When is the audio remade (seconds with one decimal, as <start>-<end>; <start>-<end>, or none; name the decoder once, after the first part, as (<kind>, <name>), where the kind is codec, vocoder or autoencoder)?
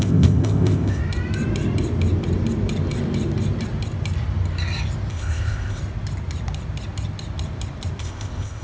0.0-1.0 (codec, ZipCodec); 5.1-5.8; 8.0-8.6